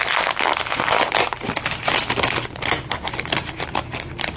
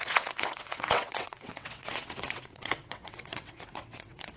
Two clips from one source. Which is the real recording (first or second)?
first